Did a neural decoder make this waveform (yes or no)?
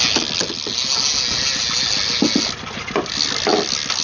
no